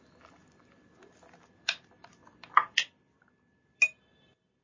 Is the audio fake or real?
fake